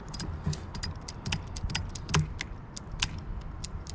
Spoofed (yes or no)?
no